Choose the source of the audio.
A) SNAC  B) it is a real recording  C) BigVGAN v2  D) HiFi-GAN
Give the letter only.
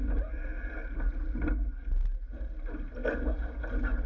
B